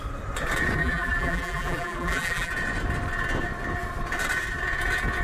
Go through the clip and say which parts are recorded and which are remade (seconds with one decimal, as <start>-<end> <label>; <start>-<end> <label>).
0.0-0.8 recorded; 0.8-2.5 remade; 2.5-5.2 recorded